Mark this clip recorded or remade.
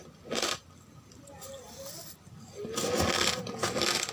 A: recorded